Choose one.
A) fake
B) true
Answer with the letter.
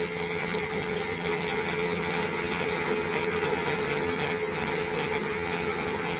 A